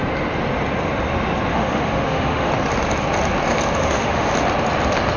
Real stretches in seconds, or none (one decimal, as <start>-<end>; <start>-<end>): 0.0-1.5; 2.5-3.8; 4.3-5.2